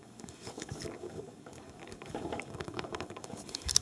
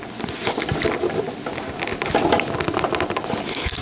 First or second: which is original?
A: second